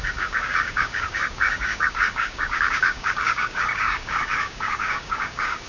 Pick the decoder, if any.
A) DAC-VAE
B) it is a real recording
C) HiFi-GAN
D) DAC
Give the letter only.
D